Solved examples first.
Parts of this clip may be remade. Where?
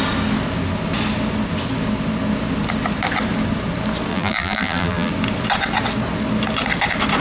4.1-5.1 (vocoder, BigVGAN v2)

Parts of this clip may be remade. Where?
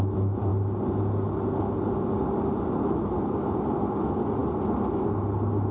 none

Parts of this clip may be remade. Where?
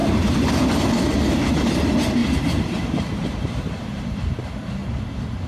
0.0-0.7 (vocoder, BigVGAN v2); 2.2-4.0; 4.8-5.5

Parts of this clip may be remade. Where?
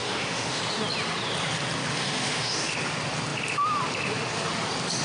0.0-0.6 (autoencoder, DAC-VAE); 1.9-2.7